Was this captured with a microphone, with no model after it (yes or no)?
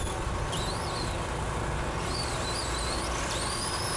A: yes